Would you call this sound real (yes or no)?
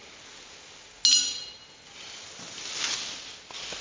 yes